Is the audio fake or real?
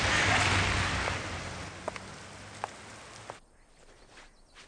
real